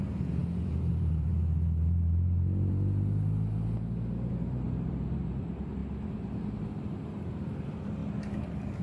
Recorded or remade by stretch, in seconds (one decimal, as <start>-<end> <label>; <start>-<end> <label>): 0.0-1.3 remade; 1.3-4.3 recorded; 4.3-5.8 remade; 5.8-6.9 recorded; 6.9-8.0 remade; 8.0-8.8 recorded